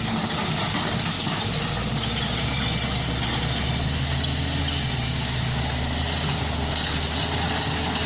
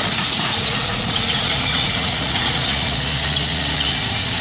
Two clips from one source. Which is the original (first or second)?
first